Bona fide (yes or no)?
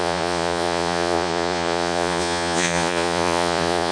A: no